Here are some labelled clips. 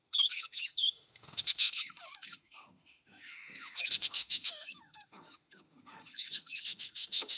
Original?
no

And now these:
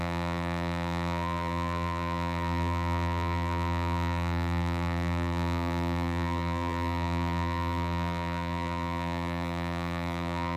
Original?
no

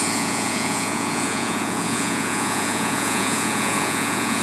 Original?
no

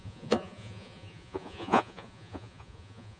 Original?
no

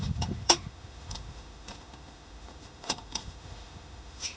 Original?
no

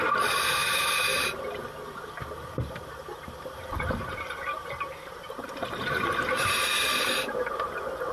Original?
no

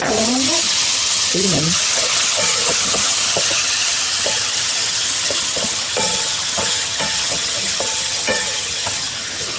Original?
no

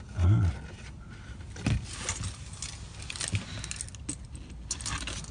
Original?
yes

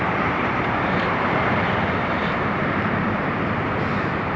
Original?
no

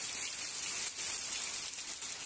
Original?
yes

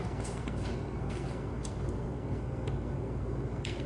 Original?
no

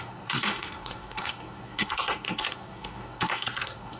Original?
no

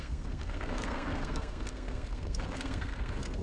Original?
no